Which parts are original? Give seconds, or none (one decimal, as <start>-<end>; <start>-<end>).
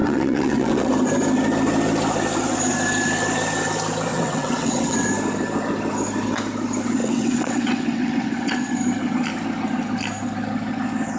0.9-4.1; 5.1-7.0; 8.7-11.2